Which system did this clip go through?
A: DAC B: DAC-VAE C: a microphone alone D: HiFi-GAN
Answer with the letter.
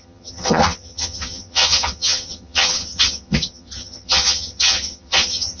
D